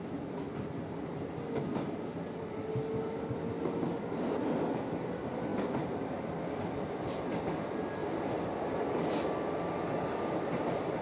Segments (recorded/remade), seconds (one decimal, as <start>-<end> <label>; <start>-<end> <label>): 0.0-11.0 recorded